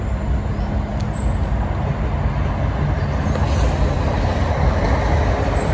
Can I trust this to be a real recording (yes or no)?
yes